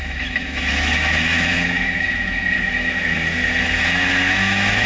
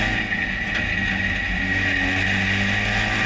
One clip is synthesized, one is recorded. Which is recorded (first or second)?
second